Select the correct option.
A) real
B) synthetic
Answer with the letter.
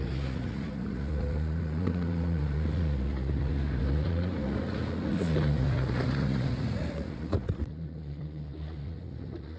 B